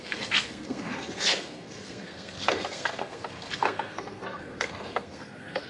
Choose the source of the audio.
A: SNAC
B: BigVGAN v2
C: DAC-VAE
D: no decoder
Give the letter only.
A